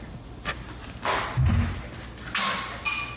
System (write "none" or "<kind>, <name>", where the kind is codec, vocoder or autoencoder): none